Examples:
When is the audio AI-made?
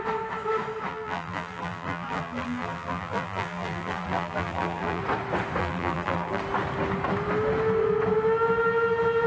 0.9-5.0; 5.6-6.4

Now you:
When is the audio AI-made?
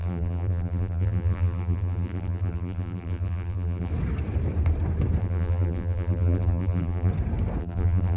0.0-3.9; 5.2-7.1; 7.6-8.2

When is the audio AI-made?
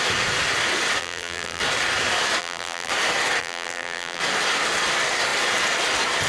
1.0-1.6; 2.4-2.9; 3.4-4.2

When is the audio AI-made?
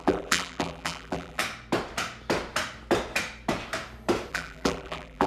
0.0-1.4; 4.3-5.3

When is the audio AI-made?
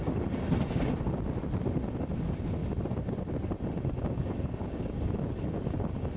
2.6-3.6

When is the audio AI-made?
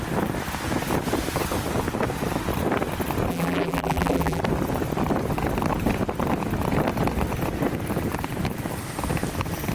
3.3-4.4